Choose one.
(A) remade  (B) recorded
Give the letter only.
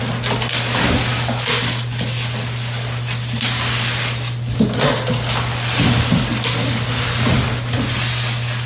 B